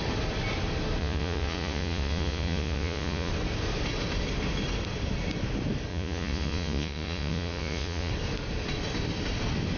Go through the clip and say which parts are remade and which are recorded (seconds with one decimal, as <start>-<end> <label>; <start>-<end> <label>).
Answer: 0.0-1.0 recorded; 1.0-3.3 remade; 3.3-5.9 recorded; 5.9-8.1 remade; 8.1-9.8 recorded